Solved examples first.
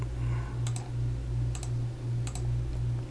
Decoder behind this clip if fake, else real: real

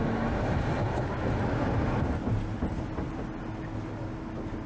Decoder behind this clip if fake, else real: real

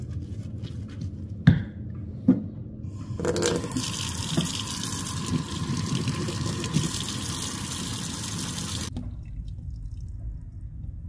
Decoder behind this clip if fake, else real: real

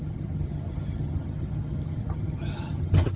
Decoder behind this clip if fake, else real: fake, vocoder, HiFi-GAN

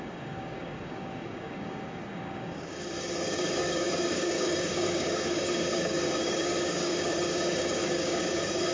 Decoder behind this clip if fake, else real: fake, codec, DAC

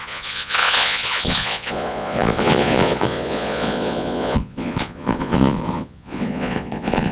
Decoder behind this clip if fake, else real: fake, vocoder, Vocos